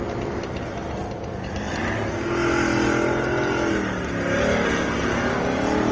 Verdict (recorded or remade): recorded